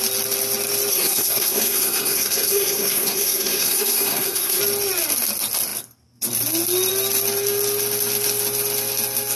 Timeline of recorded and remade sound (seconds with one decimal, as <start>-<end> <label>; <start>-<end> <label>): 0.0-0.9 recorded; 0.9-4.6 remade; 4.6-9.3 recorded